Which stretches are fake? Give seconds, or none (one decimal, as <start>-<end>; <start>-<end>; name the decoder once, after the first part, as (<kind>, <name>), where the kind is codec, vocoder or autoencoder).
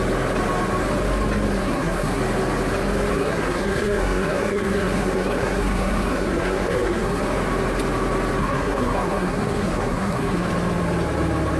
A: 1.6-2.2 (codec, SNAC); 3.1-7.2; 8.4-10.5